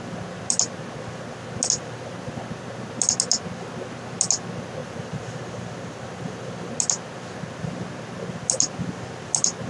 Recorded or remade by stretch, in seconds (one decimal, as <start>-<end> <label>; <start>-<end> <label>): 0.0-4.8 recorded; 4.8-6.7 remade; 6.7-9.7 recorded